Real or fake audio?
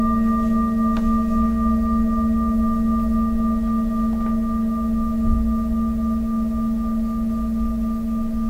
real